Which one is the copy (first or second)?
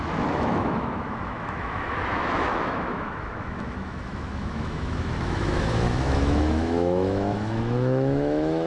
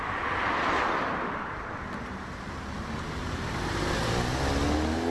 first